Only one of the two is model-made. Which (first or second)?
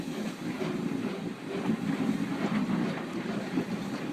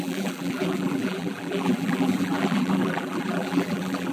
second